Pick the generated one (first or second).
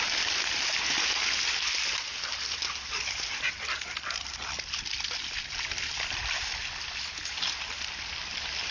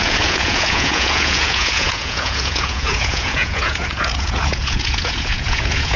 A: second